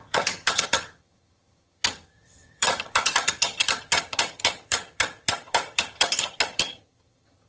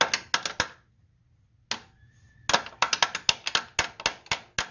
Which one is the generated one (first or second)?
first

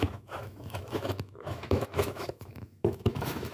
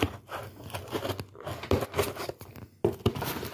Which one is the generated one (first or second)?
first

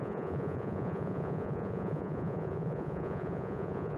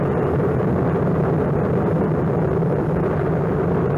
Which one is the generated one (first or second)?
first